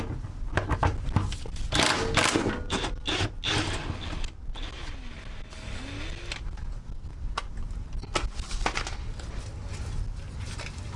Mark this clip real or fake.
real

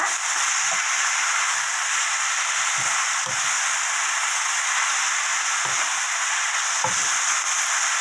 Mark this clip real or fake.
real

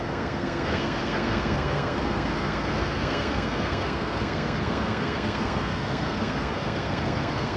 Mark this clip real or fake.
fake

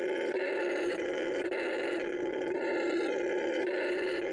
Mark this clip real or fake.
real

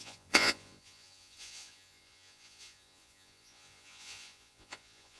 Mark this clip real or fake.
fake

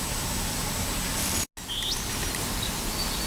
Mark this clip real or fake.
real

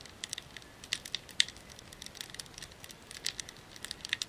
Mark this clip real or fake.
real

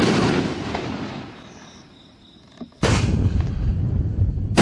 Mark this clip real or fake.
fake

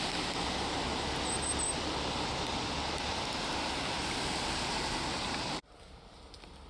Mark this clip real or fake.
real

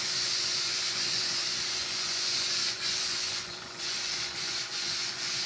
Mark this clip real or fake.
fake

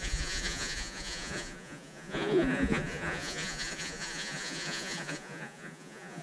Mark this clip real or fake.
fake